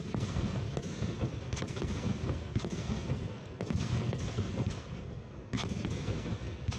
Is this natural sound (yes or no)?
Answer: no